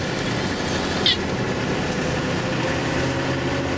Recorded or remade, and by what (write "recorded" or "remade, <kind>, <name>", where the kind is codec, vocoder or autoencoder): recorded